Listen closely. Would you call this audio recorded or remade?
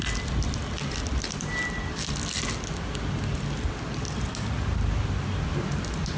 recorded